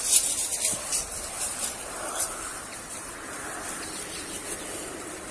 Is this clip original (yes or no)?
no